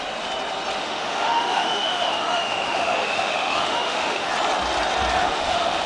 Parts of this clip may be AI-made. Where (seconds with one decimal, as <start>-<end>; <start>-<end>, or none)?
0.8-4.3; 5.2-5.9